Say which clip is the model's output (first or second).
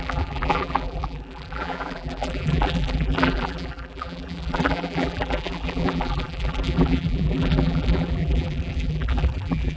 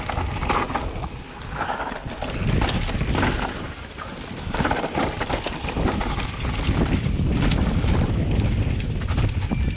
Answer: first